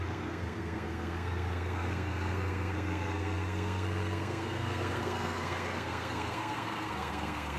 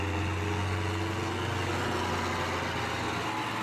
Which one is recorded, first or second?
second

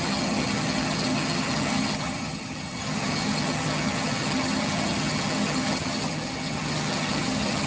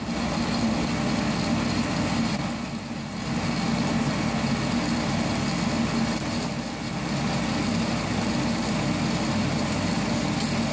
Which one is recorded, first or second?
second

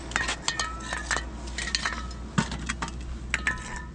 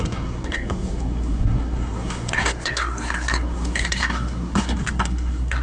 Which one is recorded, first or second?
first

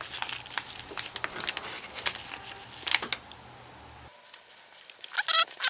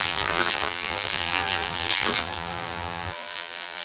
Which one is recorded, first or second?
first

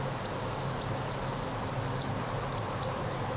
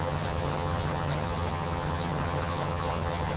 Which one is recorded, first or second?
first